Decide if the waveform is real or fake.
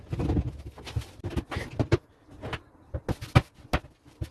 real